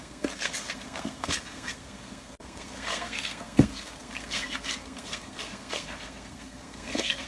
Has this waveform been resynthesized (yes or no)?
yes